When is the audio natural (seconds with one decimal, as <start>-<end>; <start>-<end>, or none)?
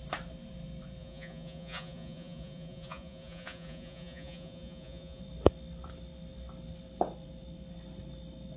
0.0-1.0; 5.2-8.6